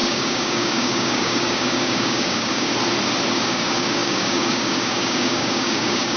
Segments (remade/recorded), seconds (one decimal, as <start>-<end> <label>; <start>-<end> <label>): 0.0-2.7 remade; 2.7-3.3 recorded; 3.3-6.2 remade